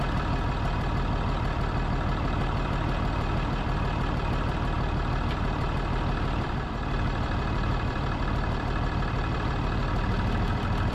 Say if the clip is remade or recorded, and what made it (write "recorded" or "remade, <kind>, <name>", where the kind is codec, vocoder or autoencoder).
remade, vocoder, BigVGAN v2